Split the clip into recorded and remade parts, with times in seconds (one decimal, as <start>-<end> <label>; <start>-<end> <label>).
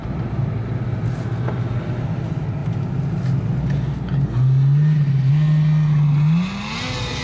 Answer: 0.0-7.2 recorded